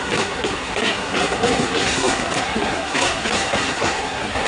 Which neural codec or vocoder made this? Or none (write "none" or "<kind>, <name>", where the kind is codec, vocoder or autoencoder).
codec, SNAC